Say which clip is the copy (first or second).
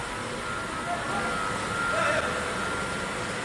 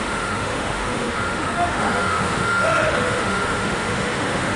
second